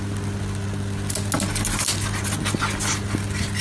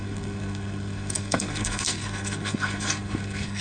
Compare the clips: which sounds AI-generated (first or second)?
second